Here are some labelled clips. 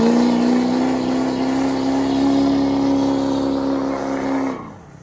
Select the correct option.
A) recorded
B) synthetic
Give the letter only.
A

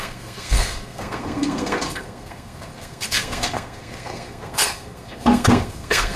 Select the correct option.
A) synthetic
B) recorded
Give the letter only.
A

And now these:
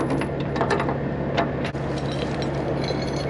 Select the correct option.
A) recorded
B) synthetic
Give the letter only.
A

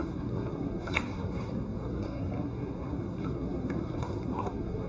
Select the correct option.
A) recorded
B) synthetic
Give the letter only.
B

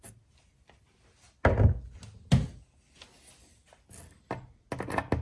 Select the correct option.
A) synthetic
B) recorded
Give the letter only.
B